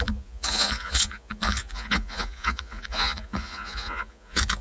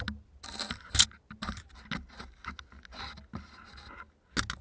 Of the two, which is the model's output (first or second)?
first